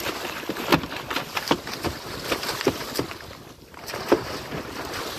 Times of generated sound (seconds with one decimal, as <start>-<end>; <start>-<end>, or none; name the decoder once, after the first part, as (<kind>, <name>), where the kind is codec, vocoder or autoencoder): none